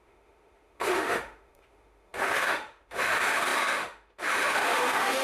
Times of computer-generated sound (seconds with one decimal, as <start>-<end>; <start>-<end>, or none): 0.0-5.2